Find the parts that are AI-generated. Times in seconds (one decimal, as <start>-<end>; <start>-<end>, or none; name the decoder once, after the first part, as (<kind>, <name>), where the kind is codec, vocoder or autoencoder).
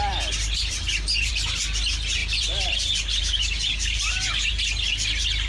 0.0-1.3 (vocoder, BigVGAN v2); 2.2-3.2